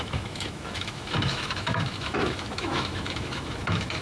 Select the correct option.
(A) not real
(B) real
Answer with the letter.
A